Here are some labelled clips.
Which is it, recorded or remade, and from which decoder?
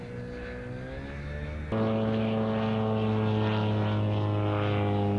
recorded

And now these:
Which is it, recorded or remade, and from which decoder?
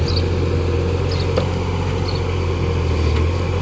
recorded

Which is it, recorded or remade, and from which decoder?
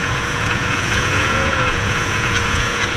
remade, vocoder, Vocos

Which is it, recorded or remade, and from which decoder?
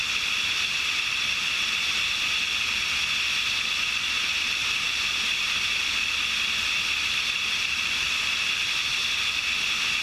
recorded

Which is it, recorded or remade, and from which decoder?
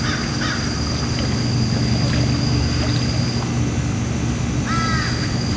recorded